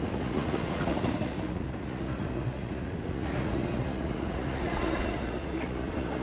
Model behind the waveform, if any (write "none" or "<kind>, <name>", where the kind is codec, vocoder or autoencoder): vocoder, Vocos